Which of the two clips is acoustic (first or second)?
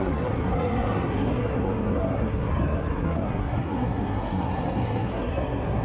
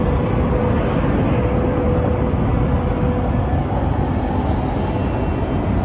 second